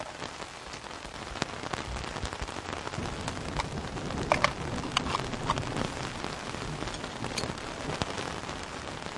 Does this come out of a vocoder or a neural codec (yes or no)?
no